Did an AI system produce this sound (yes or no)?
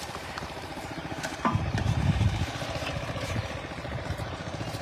yes